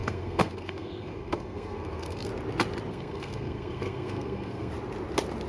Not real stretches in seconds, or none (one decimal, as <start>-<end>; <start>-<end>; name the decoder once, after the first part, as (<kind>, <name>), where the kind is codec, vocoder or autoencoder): 0.0-2.3 (codec, SNAC); 2.9-4.7